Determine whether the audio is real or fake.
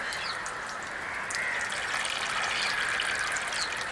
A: real